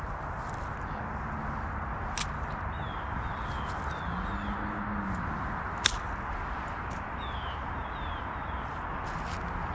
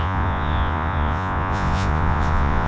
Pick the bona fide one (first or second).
first